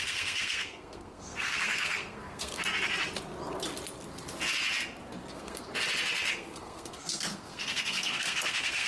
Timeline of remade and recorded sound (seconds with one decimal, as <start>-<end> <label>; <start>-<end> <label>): 0.0-2.6 remade; 2.6-5.3 recorded; 5.3-5.7 remade; 5.7-6.3 recorded; 6.3-8.9 remade